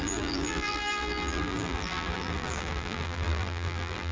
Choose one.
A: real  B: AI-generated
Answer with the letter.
B